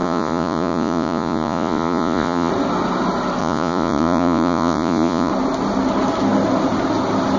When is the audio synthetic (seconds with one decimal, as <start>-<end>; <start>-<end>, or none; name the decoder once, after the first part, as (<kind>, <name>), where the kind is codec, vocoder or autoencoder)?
0.0-2.5 (vocoder, Vocos); 3.4-5.3